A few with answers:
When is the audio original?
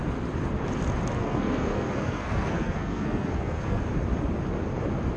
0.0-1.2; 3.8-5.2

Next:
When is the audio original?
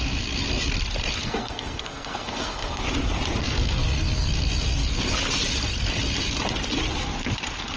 0.0-1.2; 2.8-3.4; 4.3-7.8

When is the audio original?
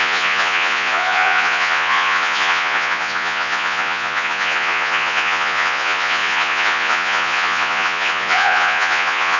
none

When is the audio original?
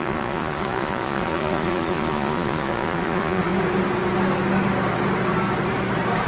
3.5-6.3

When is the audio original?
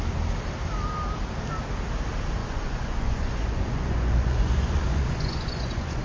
0.0-2.4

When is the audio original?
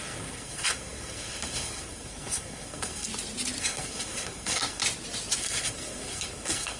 3.1-3.6; 4.8-5.4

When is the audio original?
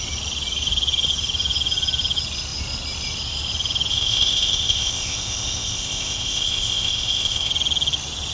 0.0-3.9; 7.5-8.3